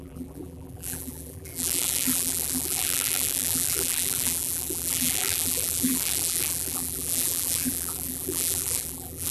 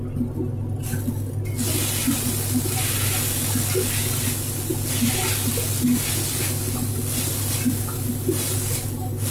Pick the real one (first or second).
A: second